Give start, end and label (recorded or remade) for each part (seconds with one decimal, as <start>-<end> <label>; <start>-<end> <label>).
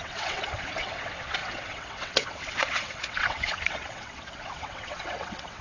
0.0-5.6 remade